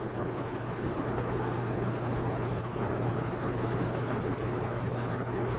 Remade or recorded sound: remade